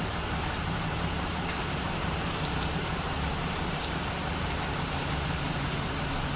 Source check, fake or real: fake